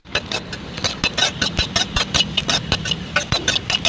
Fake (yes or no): no